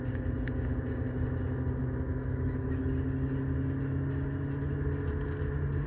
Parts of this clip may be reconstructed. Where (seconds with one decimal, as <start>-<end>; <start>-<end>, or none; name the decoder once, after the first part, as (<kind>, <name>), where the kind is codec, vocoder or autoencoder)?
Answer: 1.8-2.8 (autoencoder, DAC-VAE)